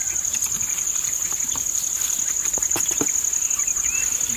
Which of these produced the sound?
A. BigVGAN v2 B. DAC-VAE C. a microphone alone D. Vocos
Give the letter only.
C